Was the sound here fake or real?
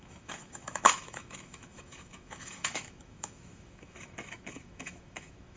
fake